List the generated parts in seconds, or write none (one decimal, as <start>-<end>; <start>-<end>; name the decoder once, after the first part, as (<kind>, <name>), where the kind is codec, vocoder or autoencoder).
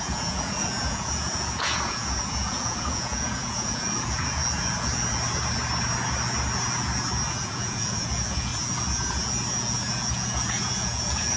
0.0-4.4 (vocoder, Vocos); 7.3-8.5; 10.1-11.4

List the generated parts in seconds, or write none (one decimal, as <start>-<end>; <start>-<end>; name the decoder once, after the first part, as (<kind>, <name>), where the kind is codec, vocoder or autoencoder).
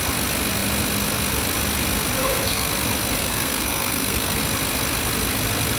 2.2-2.7 (codec, SNAC); 3.2-4.4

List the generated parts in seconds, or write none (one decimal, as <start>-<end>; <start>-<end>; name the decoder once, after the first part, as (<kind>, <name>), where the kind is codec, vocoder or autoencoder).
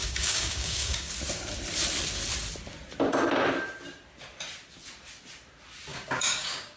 0.0-1.1 (codec, DAC); 5.9-6.8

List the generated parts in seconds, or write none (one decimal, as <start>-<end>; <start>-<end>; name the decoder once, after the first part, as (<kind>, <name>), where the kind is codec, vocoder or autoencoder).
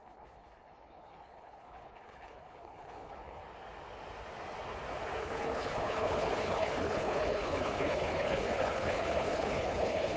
0.0-3.4 (codec, HILCodec); 5.2-10.2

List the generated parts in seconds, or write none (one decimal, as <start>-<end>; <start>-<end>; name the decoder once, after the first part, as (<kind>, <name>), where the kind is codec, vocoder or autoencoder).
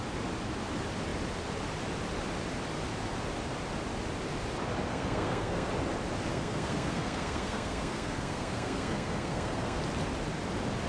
4.9-5.7 (codec, SNAC); 6.3-9.8